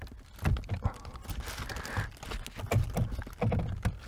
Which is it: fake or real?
real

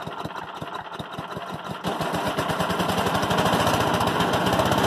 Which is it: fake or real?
real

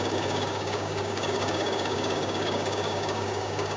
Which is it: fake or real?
fake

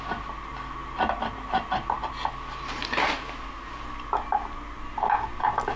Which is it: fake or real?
real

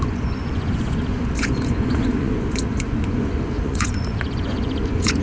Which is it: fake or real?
fake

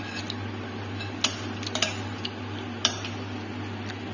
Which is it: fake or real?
real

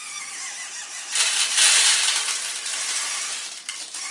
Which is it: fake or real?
real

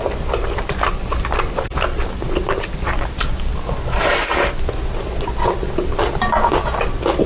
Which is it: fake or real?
real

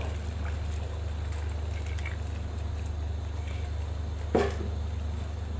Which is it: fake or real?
real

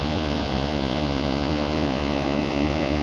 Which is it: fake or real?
fake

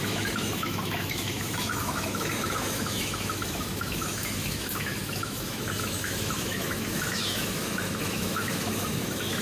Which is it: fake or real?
fake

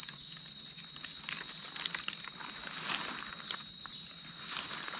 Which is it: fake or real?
real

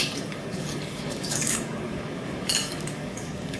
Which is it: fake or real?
fake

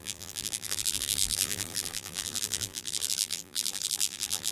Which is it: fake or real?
fake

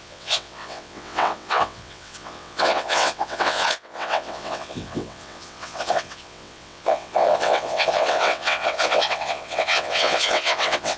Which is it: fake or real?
fake